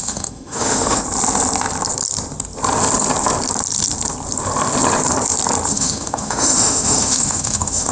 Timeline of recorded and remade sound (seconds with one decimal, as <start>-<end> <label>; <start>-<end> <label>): 0.0-1.0 remade; 1.0-5.7 recorded; 5.7-7.9 remade